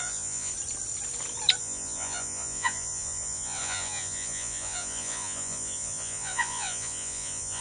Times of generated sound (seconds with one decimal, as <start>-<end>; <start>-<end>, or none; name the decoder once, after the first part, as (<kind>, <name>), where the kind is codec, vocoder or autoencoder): 0.0-0.5 (vocoder, Vocos); 1.6-7.6